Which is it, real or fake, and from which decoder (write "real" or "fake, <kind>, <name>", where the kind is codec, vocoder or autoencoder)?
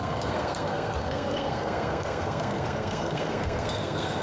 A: fake, codec, SNAC